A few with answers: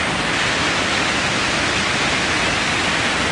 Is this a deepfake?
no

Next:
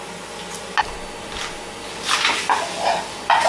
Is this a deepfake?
no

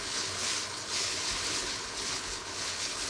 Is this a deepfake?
yes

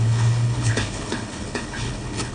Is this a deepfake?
yes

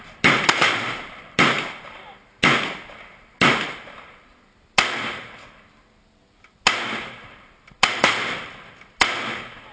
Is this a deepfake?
no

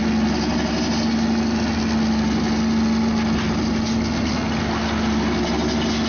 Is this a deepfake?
no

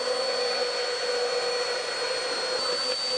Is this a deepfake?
no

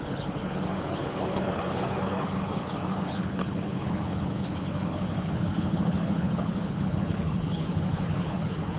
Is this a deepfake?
yes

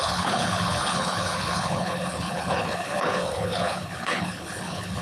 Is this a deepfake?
yes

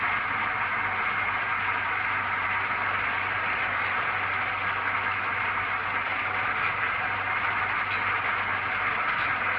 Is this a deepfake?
no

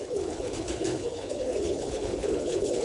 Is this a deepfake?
yes